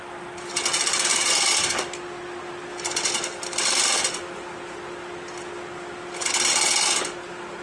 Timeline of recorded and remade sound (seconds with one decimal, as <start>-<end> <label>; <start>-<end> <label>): 0.0-7.6 recorded